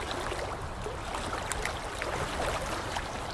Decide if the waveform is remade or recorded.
recorded